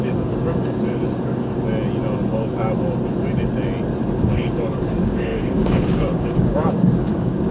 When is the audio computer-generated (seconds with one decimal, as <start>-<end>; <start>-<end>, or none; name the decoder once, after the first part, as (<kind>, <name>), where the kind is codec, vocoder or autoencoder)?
0.0-1.5 (codec, DAC); 4.2-7.5